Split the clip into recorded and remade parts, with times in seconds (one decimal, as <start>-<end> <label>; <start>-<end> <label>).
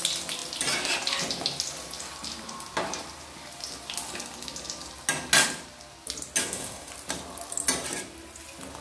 0.0-6.4 recorded; 6.4-6.9 remade; 6.9-8.8 recorded